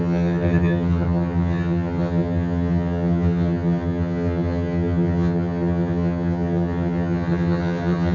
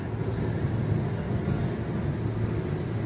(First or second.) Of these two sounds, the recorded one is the second